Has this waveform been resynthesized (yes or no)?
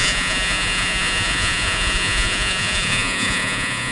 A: yes